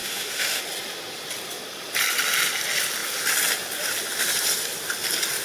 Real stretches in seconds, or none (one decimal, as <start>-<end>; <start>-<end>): 0.6-5.4